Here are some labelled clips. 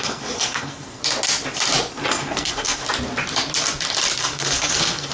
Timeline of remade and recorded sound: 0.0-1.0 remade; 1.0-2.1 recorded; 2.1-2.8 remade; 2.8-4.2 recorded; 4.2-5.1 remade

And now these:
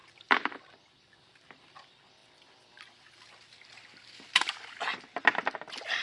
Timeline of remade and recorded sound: 0.0-1.0 remade; 1.0-6.0 recorded

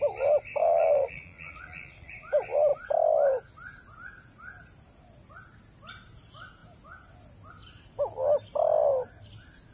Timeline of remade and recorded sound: 0.0-0.6 recorded; 0.6-2.1 remade; 2.1-9.7 recorded

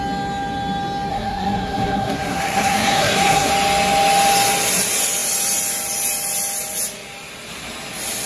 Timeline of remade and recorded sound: 0.0-1.1 recorded; 1.1-3.5 remade; 3.5-8.3 recorded